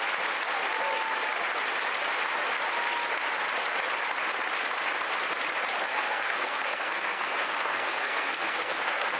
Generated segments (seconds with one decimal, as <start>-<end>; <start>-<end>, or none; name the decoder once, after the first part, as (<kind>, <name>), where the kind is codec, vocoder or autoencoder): 5.9-9.2 (codec, SNAC)